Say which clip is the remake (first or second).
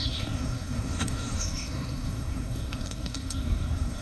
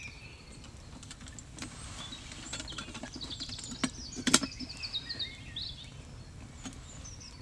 first